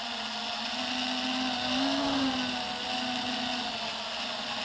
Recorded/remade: recorded